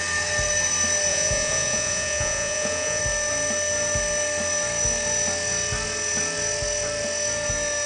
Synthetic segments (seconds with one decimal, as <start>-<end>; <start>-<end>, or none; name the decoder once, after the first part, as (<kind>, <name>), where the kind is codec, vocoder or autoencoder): 1.1-3.0 (vocoder, Vocos)